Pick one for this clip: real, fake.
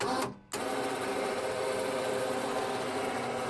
real